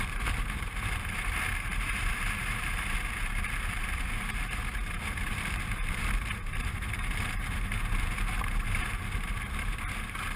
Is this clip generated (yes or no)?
yes